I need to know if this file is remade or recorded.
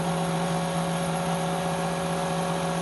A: remade